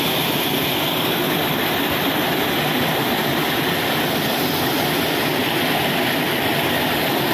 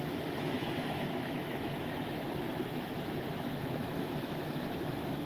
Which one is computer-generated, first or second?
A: second